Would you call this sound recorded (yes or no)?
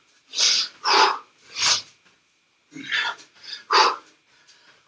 yes